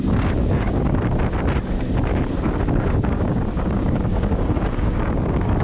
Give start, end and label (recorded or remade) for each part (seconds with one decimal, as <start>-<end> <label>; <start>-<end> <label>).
0.0-0.4 recorded; 0.4-1.0 remade; 1.0-2.1 recorded; 2.1-5.6 remade